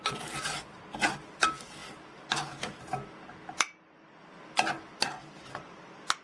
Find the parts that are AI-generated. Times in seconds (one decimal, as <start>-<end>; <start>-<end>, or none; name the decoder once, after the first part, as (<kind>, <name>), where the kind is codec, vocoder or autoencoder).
none